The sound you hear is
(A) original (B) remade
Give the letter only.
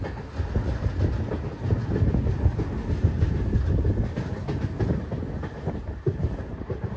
A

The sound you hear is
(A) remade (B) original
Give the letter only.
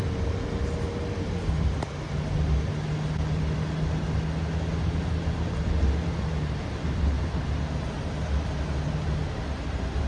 B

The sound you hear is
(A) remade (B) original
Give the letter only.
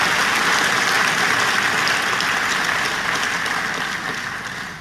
B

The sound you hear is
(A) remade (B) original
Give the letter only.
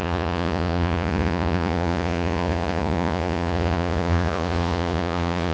A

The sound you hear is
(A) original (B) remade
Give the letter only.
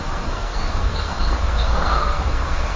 B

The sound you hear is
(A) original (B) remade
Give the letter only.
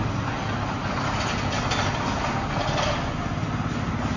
A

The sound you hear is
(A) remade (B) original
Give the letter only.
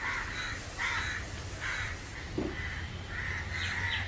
B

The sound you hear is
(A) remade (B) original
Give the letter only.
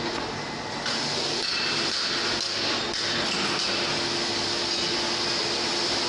B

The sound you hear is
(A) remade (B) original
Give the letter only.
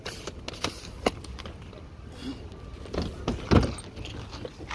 B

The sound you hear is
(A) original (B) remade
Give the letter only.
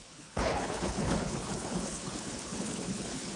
B